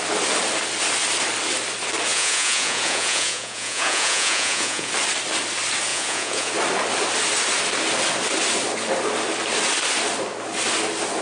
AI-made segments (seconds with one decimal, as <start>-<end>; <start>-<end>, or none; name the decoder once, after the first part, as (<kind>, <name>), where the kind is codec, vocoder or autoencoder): 2.1-4.9 (vocoder, Vocos); 5.9-6.5